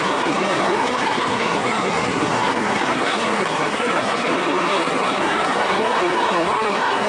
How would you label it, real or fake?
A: fake